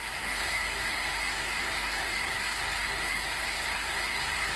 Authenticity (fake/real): fake